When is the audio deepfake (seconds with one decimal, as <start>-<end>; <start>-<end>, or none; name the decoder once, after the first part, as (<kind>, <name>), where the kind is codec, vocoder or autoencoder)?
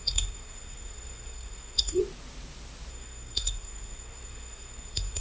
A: 0.0-2.0 (codec, SNAC); 2.9-5.2